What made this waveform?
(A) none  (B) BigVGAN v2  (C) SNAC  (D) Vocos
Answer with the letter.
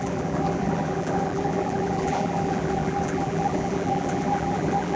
B